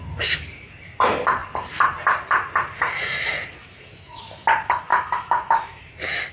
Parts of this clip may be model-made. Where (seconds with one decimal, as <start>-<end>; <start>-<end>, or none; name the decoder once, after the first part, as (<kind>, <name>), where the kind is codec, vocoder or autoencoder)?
3.6-4.2 (autoencoder, DAC-VAE); 4.9-5.8